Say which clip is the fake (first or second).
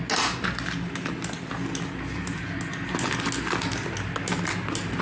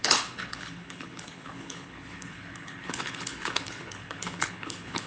second